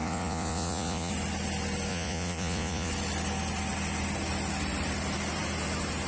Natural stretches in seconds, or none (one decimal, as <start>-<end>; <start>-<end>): 1.1-1.9; 2.9-6.1